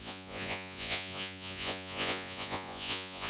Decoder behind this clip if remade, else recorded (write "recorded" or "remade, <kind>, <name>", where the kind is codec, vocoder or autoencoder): remade, vocoder, Vocos